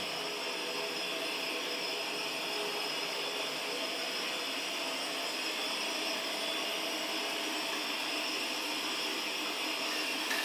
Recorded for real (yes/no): yes